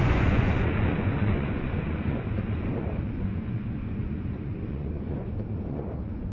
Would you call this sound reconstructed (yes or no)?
yes